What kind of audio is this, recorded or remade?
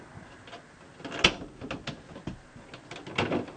recorded